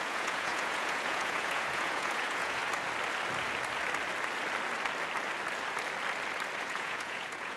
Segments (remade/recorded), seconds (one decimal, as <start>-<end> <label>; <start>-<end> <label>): 0.0-2.6 remade; 2.6-6.6 recorded; 6.6-7.6 remade